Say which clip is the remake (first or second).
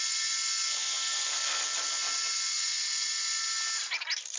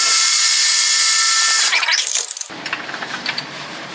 second